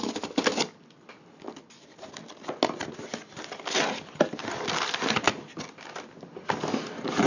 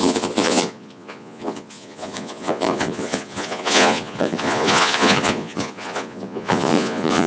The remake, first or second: second